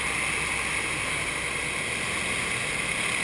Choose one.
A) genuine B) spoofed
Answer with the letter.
A